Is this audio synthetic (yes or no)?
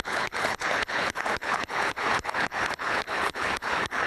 yes